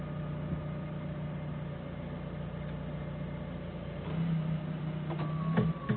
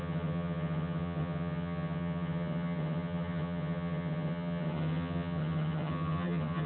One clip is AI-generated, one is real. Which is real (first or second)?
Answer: first